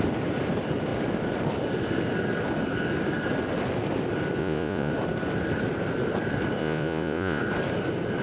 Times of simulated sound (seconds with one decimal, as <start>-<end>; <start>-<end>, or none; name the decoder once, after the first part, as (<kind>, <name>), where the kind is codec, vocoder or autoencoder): 4.4-4.9 (vocoder, Vocos); 6.6-7.4